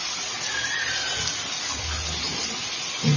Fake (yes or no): no